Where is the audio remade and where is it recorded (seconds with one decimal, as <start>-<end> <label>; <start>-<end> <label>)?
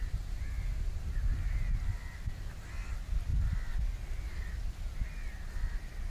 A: 0.0-6.1 recorded